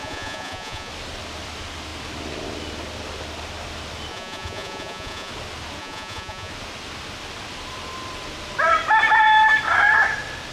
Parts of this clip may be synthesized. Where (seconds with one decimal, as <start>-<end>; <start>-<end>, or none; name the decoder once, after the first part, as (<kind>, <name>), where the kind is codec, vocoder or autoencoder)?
0.0-0.9 (vocoder, Vocos); 4.1-5.3; 5.8-6.5